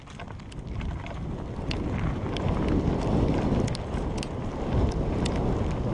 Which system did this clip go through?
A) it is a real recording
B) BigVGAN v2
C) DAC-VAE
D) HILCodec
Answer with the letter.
A